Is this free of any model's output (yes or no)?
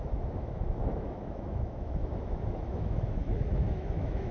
no